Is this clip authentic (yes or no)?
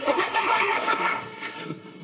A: no